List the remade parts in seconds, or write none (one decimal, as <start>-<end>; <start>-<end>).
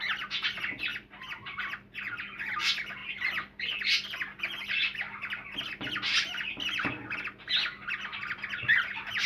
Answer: 0.9-1.6; 8.1-9.3